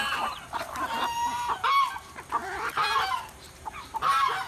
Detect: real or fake fake